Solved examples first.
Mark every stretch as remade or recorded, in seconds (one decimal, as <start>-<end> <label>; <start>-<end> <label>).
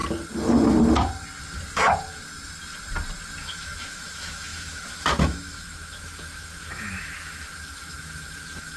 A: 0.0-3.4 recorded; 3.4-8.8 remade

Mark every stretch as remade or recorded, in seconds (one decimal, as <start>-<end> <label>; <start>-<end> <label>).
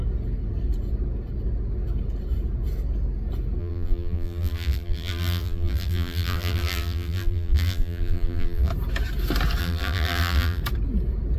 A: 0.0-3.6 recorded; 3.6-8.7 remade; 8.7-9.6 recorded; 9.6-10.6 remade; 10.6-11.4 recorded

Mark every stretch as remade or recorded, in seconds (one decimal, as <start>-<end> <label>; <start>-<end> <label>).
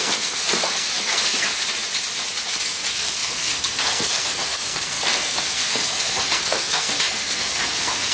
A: 0.0-1.6 remade; 1.6-2.5 recorded; 2.5-8.1 remade